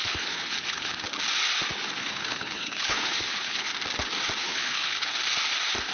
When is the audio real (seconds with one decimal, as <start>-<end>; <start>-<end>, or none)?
1.0-2.0; 3.7-4.4; 5.2-5.9